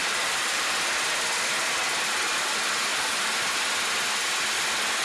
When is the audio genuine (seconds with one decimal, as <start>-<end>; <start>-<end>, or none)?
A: 0.7-2.9; 3.6-5.0